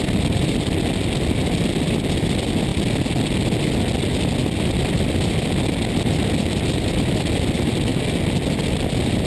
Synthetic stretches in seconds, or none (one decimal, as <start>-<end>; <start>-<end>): 0.0-2.7; 4.9-7.9; 8.7-9.3

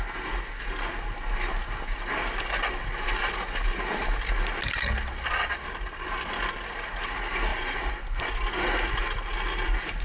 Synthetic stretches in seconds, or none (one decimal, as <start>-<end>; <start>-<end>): 7.5-8.2

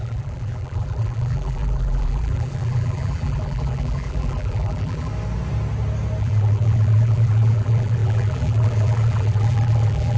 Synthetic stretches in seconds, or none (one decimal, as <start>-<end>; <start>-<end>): 0.0-5.1; 6.2-10.2

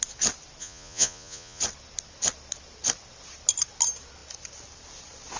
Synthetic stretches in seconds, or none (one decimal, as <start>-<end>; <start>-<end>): 0.6-1.6

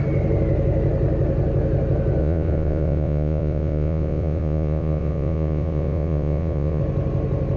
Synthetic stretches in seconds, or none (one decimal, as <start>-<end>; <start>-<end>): 2.2-6.8